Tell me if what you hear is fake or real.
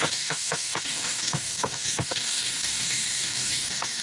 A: fake